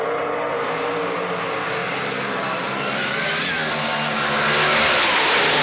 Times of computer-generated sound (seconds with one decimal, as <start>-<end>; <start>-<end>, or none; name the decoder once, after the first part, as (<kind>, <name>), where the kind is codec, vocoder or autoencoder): 1.8-3.1 (vocoder, BigVGAN v2)